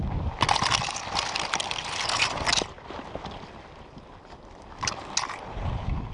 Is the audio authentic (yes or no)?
yes